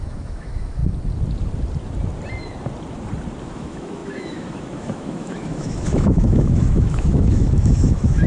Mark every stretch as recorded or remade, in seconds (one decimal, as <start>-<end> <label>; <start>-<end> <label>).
0.0-0.8 remade; 0.8-3.4 recorded; 3.4-8.3 remade